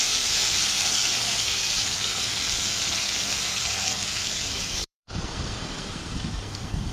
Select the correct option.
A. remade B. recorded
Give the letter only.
A